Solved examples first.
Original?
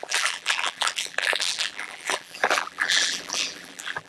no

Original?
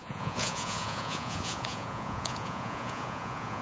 no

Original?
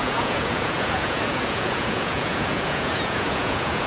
no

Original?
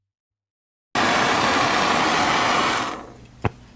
yes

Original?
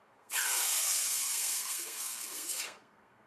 no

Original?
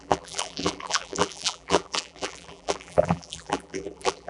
no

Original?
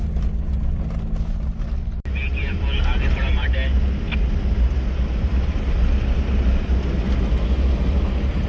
yes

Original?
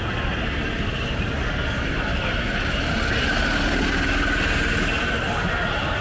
yes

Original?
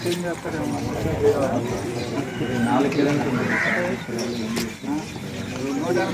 no